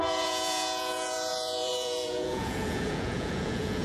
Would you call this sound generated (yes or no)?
yes